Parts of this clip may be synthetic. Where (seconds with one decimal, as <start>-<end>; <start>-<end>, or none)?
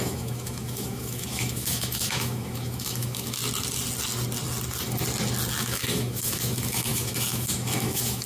0.0-3.4; 5.6-8.3